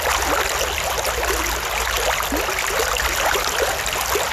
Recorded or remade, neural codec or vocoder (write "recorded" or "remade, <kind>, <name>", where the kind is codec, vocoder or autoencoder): recorded